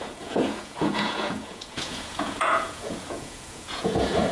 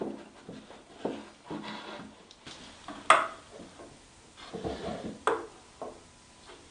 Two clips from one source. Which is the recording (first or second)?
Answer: second